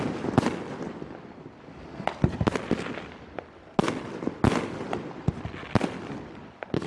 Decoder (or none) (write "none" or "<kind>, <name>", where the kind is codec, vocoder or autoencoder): none